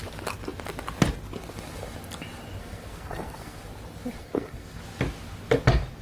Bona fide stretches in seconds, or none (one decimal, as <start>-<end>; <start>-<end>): 0.0-2.6; 3.6-4.2; 4.8-6.0